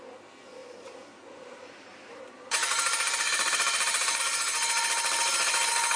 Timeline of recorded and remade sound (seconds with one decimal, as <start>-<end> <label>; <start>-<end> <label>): 0.0-0.6 recorded; 0.6-4.2 remade; 4.2-6.0 recorded